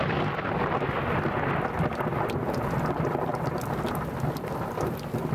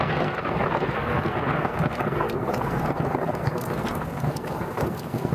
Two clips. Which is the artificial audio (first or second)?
second